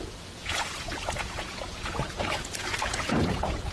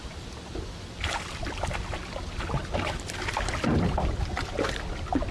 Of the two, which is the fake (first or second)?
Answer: first